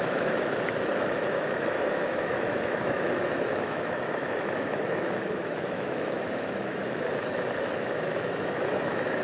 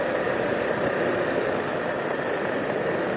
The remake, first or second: first